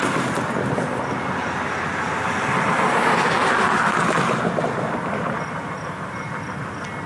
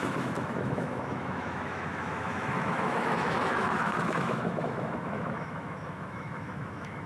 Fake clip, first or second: second